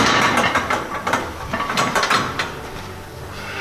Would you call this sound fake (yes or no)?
yes